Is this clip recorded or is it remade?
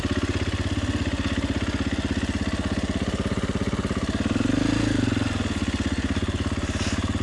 recorded